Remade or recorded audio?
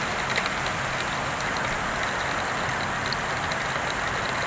recorded